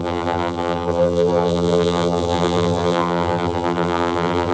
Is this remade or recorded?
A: remade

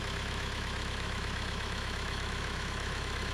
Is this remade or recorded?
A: remade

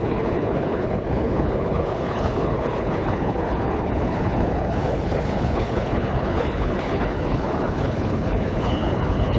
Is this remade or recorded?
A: remade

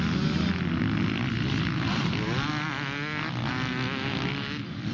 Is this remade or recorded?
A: recorded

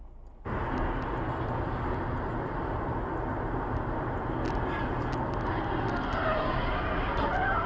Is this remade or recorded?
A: recorded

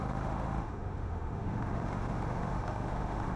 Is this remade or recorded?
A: remade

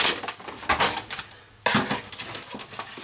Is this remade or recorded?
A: recorded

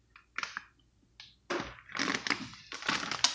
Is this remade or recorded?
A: recorded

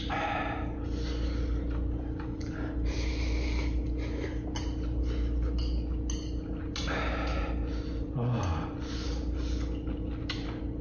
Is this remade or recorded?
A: recorded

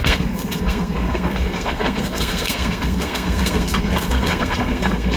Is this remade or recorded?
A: remade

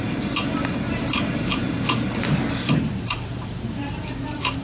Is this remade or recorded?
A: remade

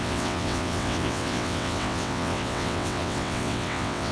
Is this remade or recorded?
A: remade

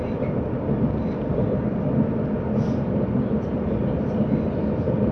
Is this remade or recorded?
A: recorded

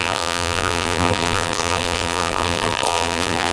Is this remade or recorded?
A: remade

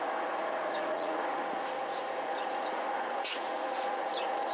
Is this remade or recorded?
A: remade